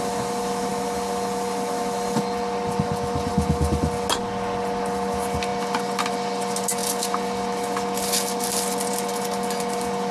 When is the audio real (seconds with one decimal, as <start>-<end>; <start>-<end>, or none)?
0.0-10.1